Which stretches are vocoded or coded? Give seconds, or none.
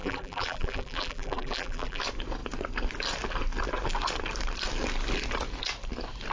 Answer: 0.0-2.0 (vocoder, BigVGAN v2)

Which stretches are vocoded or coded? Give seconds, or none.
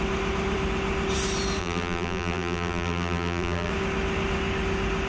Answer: 1.6-3.7 (vocoder, BigVGAN v2)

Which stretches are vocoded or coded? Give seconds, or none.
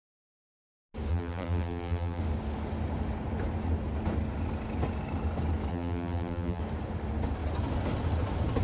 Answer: 1.1-2.2 (vocoder, BigVGAN v2); 5.7-6.6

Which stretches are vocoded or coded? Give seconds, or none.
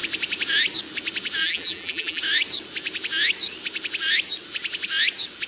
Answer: 1.4-2.2 (vocoder, BigVGAN v2)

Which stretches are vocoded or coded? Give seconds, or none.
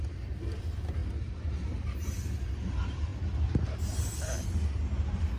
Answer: 0.0-1.0 (vocoder, BigVGAN v2); 1.7-3.1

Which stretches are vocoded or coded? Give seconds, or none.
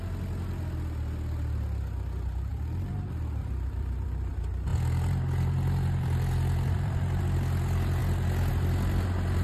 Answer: 2.5-4.3 (vocoder, BigVGAN v2); 4.7-7.2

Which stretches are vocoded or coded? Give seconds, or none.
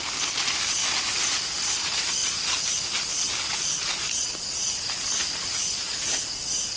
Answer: 0.8-1.6 (vocoder, BigVGAN v2); 2.2-6.3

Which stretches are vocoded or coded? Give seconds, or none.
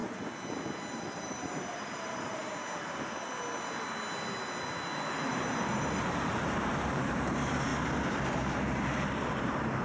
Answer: 0.9-2.4 (vocoder, BigVGAN v2); 5.1-7.7; 8.5-9.8